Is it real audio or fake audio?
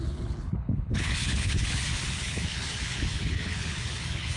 fake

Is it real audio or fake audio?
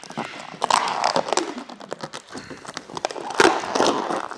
real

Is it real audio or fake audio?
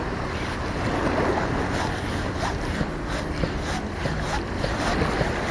real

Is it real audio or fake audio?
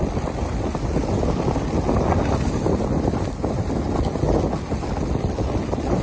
real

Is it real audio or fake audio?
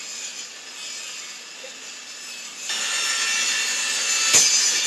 real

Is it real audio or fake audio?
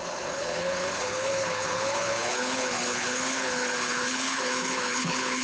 fake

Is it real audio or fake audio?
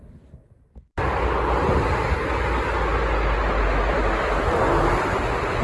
real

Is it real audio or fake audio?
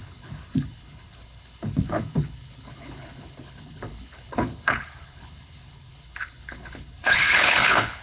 fake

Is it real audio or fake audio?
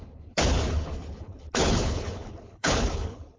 fake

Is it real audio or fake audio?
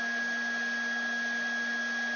real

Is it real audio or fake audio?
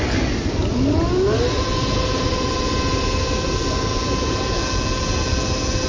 real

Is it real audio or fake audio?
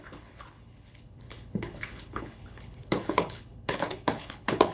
fake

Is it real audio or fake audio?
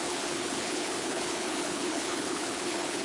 fake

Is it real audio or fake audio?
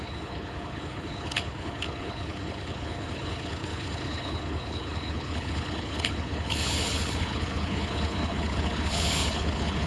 fake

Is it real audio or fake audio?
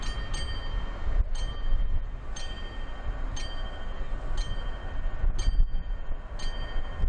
real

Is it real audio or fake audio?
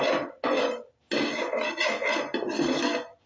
real